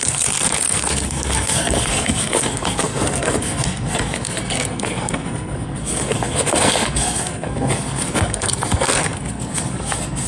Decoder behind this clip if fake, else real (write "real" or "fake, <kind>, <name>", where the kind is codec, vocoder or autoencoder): fake, codec, SNAC